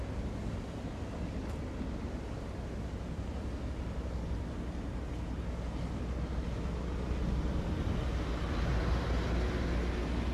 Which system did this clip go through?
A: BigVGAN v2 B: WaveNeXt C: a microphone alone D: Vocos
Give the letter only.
C